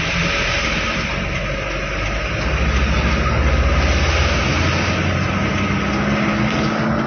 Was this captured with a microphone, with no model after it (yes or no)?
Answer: yes